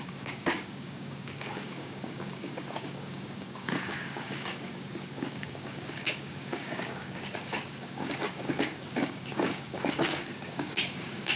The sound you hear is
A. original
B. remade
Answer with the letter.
B